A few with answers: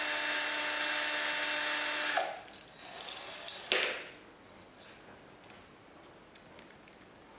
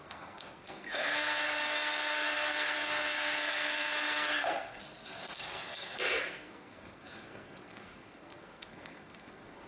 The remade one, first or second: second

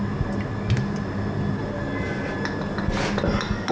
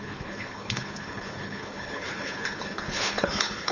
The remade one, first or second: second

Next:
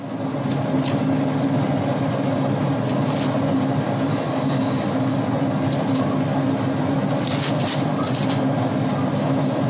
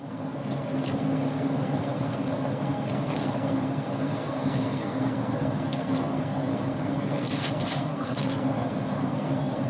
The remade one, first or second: second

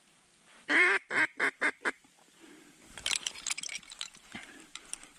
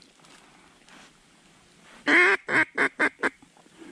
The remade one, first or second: first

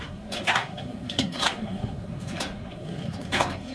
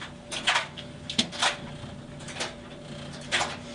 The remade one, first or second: first